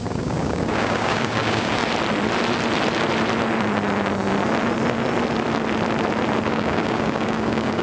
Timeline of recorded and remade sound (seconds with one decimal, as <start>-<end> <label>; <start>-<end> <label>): 0.0-1.8 remade; 1.8-6.5 recorded; 6.5-7.8 remade